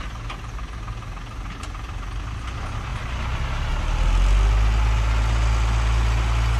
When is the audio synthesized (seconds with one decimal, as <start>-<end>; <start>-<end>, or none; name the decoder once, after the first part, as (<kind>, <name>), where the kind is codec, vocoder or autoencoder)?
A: none